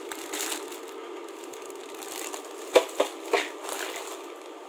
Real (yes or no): yes